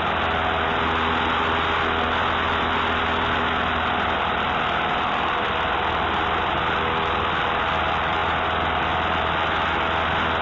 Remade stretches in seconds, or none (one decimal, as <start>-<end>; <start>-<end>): none